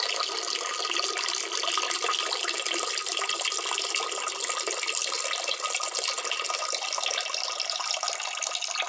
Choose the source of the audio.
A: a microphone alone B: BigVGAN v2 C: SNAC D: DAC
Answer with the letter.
A